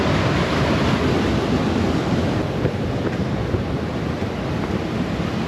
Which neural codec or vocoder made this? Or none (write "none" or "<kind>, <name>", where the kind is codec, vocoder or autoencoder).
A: none